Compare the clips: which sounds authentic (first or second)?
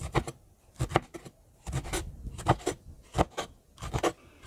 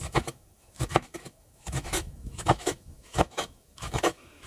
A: first